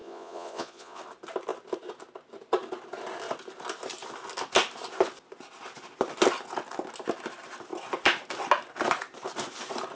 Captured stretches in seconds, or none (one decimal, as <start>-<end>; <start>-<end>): 1.0-10.0